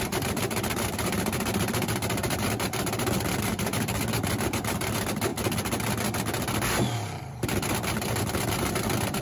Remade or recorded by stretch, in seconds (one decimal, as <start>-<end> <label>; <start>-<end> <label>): 0.0-5.3 remade; 5.3-7.2 recorded; 7.2-9.2 remade